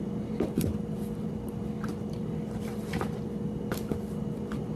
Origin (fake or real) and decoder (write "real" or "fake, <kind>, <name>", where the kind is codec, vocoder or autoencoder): real